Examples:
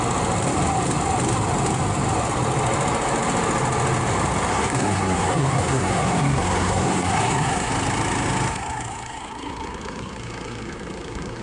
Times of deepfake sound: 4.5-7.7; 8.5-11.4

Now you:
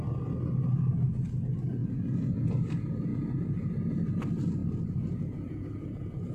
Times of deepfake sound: 1.8-2.7; 3.1-3.7; 4.6-6.3

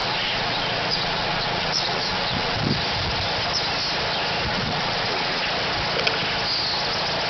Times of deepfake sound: 0.0-2.6; 4.5-5.4